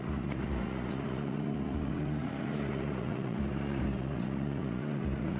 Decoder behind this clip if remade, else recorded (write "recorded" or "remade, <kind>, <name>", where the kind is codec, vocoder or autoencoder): remade, vocoder, Vocos